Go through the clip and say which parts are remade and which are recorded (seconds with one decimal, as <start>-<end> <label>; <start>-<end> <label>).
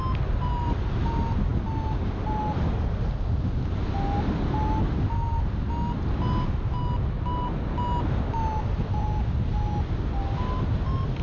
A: 0.0-11.2 recorded